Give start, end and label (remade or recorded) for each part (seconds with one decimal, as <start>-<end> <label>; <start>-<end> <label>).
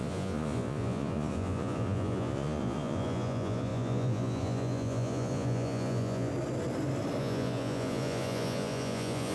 0.0-6.3 remade; 6.3-7.2 recorded; 7.2-9.3 remade